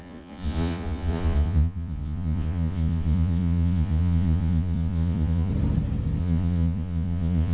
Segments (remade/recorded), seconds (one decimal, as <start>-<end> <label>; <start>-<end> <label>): 0.0-5.5 remade; 5.5-6.2 recorded; 6.2-7.5 remade